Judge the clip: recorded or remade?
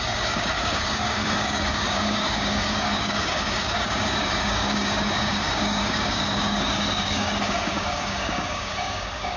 remade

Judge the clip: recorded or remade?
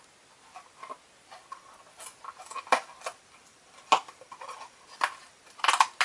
recorded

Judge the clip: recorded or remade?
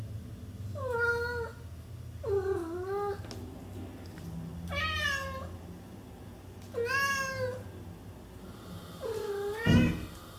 recorded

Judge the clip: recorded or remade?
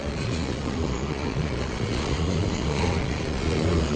remade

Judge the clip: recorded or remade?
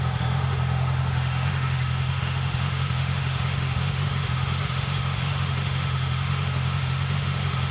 remade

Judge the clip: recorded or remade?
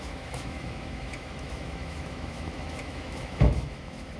remade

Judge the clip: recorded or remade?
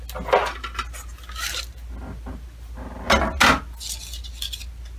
recorded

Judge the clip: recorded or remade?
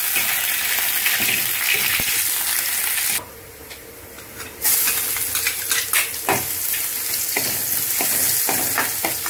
recorded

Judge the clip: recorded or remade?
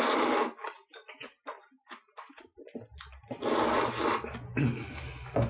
recorded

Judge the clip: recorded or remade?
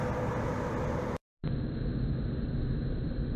recorded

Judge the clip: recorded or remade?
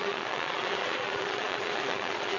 remade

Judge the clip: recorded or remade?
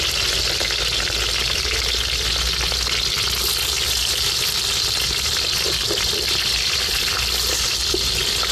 recorded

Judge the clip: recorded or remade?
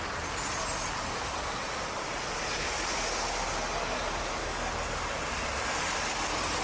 recorded